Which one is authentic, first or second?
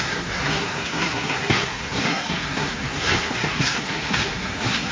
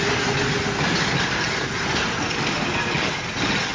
second